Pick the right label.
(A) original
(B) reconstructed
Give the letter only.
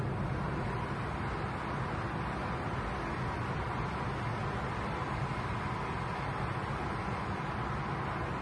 A